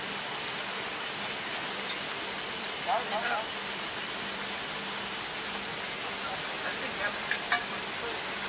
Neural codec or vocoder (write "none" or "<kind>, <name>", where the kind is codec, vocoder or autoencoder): none